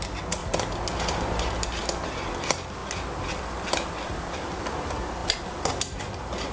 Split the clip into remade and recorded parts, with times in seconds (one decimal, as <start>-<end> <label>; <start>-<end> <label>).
0.0-6.5 recorded